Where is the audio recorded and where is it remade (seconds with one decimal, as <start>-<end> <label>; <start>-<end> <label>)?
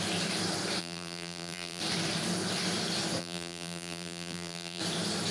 0.0-0.8 recorded; 0.8-1.8 remade; 1.8-3.2 recorded; 3.2-4.8 remade; 4.8-5.3 recorded